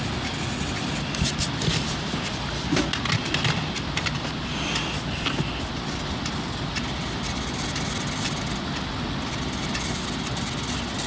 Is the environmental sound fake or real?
real